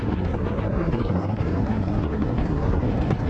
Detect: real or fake fake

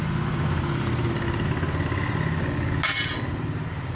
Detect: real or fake real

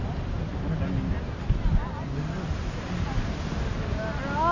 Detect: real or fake real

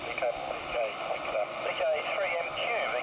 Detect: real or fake real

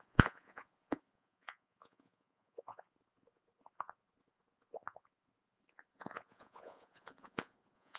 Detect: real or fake fake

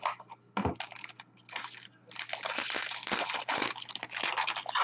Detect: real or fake real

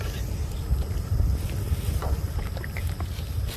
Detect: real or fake real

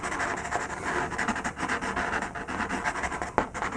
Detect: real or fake real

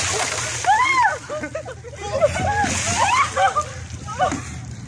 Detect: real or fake real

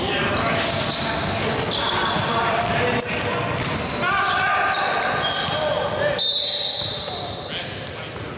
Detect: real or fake real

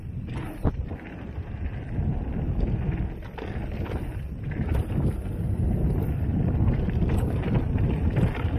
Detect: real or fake real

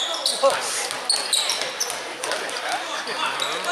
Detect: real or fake real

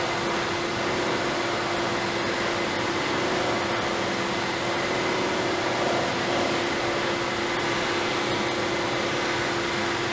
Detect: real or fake real